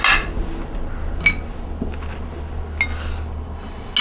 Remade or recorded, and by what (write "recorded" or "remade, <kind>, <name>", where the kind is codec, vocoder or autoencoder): recorded